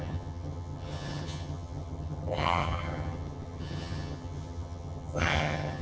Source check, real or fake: fake